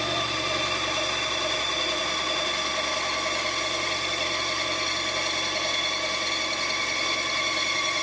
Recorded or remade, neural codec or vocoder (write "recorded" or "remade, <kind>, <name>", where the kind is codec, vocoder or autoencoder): recorded